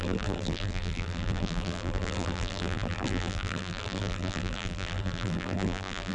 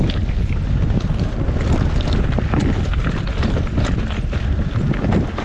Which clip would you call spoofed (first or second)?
first